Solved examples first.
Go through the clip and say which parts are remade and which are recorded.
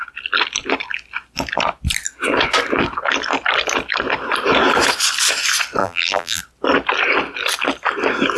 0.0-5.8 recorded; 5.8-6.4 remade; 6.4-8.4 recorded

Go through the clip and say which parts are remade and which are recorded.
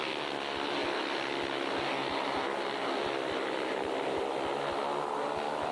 0.0-5.7 recorded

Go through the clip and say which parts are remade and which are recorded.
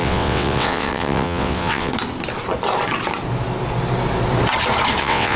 0.0-1.9 remade; 1.9-5.0 recorded; 5.0-5.4 remade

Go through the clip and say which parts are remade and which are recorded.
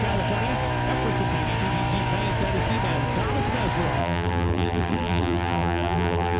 0.0-4.0 recorded; 4.0-6.4 remade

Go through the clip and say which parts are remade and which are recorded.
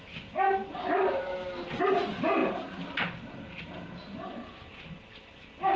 0.0-5.8 recorded